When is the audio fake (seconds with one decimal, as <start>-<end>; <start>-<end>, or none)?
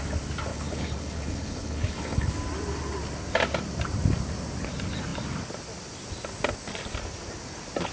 0.5-2.3